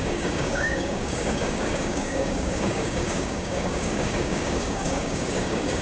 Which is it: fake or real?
fake